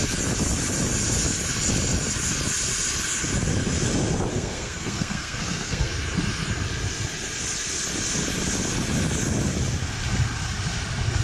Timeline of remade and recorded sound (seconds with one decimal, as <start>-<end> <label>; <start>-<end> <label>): 0.0-4.3 recorded; 4.3-5.9 remade; 5.9-11.2 recorded